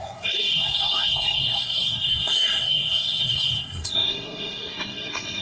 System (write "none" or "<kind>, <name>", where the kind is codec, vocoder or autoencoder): codec, SNAC